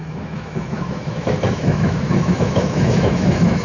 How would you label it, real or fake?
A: fake